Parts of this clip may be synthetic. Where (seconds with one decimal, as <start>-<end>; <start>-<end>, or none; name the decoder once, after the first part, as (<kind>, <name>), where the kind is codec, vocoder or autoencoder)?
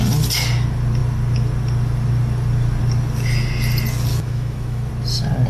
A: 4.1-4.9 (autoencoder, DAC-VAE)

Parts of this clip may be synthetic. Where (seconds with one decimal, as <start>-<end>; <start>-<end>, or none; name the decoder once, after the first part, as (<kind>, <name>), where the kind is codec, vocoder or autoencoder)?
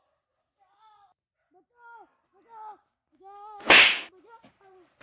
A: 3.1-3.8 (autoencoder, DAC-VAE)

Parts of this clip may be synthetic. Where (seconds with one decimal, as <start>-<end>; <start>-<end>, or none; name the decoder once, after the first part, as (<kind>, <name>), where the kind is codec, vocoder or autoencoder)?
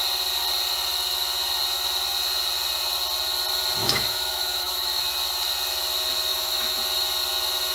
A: 3.8-5.0 (autoencoder, DAC-VAE); 6.3-6.8